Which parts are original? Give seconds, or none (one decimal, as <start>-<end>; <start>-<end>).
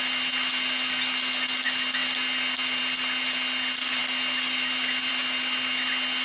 0.0-6.2